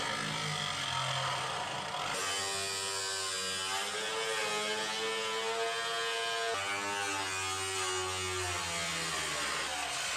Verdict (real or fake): real